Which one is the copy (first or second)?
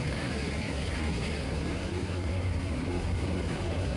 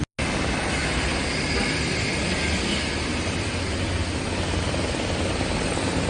first